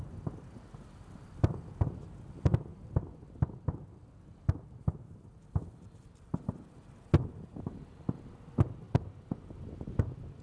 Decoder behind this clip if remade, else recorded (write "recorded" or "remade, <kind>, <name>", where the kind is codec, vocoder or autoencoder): recorded